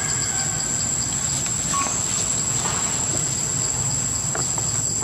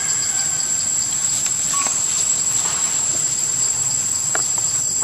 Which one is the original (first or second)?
first